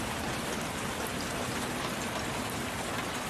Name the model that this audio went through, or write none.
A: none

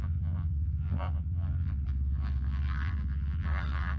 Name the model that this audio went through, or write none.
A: vocoder, BigVGAN v2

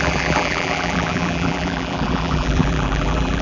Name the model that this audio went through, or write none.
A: vocoder, BigVGAN v2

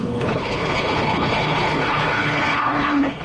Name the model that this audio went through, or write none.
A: codec, HILCodec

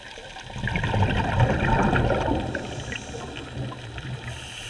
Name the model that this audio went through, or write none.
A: none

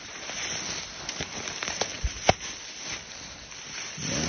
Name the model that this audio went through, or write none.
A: none